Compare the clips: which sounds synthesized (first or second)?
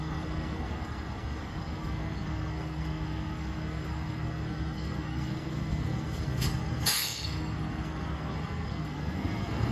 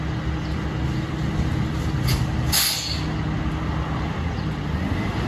first